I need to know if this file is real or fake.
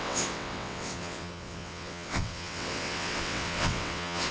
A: fake